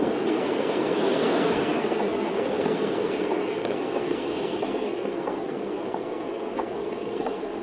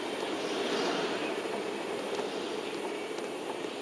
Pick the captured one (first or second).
second